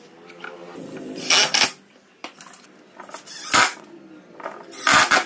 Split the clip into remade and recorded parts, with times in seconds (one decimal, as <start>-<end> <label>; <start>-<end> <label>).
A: 0.0-5.3 recorded

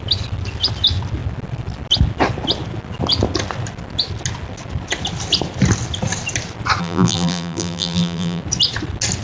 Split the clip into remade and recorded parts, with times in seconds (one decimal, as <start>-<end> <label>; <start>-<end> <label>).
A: 0.0-6.8 recorded; 6.8-8.4 remade; 8.4-9.2 recorded

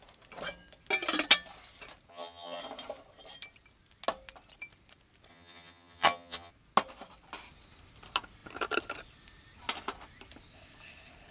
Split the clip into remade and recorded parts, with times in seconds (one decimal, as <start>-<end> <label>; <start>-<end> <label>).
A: 0.0-2.1 recorded; 2.1-2.6 remade; 2.6-5.3 recorded; 5.3-6.5 remade; 6.5-11.3 recorded

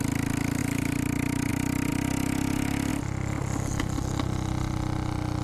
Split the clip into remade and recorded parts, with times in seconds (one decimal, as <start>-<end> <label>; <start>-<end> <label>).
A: 0.0-0.6 recorded; 0.6-1.5 remade; 1.5-5.4 recorded

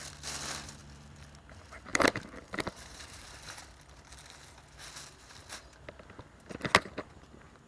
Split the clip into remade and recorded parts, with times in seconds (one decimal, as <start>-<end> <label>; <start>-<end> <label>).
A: 0.0-1.9 recorded; 1.9-3.6 remade; 3.6-7.7 recorded

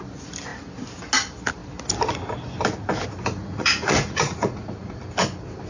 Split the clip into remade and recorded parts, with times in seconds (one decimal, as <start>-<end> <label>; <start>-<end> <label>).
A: 0.0-3.4 recorded; 3.4-5.0 remade; 5.0-5.7 recorded

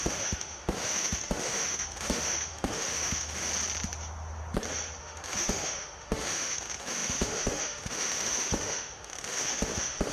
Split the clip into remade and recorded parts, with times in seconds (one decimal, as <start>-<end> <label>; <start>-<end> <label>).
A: 0.0-3.5 remade; 3.5-5.0 recorded; 5.0-10.1 remade

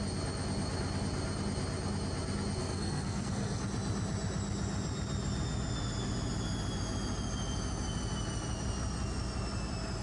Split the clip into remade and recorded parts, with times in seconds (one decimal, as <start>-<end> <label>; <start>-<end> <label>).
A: 0.0-2.6 recorded; 2.6-3.6 remade; 3.6-10.0 recorded